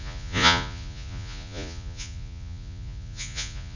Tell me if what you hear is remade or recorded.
remade